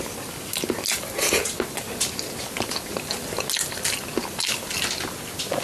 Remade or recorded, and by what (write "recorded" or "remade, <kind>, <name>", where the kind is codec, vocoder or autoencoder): recorded